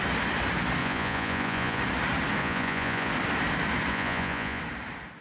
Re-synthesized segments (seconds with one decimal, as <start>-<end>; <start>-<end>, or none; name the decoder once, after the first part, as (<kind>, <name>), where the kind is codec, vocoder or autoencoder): 0.8-1.8 (vocoder, Vocos); 2.4-3.1; 3.9-4.6